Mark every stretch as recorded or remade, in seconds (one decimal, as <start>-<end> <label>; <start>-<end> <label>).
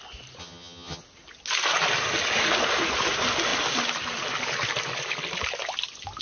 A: 0.0-0.4 recorded; 0.4-1.0 remade; 1.0-6.2 recorded